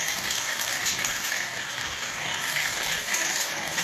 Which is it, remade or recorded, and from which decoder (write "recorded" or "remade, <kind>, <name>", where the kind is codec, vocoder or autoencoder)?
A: remade, codec, DAC